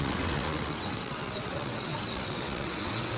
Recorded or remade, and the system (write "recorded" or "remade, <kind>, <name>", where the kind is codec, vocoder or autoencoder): remade, vocoder, WaveNeXt